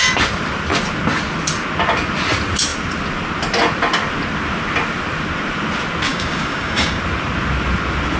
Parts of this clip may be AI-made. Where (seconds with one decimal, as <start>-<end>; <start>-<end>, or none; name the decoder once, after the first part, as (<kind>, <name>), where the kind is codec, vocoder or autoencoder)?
6.1-7.0 (codec, DAC)